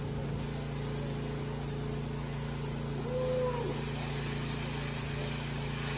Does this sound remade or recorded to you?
recorded